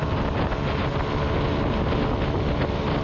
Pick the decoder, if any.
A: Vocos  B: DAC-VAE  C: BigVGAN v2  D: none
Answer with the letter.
D